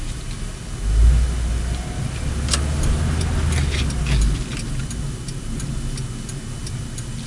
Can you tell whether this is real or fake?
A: real